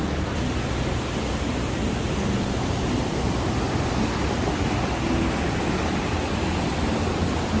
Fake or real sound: real